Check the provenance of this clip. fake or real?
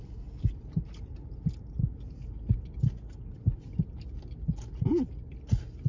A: real